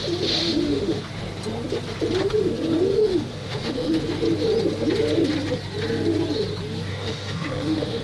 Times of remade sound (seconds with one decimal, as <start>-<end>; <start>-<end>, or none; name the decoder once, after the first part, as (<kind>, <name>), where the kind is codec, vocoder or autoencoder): 0.4-1.0 (autoencoder, DAC-VAE); 2.9-4.0; 6.9-8.0